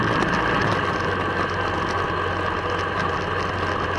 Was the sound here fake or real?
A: real